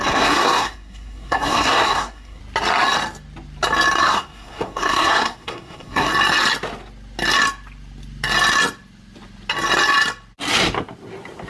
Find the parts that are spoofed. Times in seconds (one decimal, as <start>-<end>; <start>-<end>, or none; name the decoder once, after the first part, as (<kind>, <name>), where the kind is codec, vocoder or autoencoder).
0.0-2.4 (codec, SNAC); 4.0-6.1